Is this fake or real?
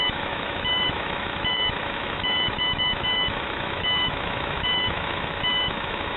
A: fake